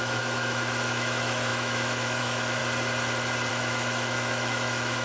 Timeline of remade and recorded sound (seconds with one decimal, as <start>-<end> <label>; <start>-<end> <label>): 0.0-2.6 remade; 2.6-3.5 recorded; 3.5-5.0 remade